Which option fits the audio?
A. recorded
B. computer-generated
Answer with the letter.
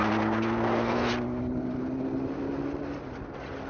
A